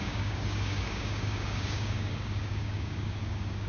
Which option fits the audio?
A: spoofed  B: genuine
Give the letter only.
A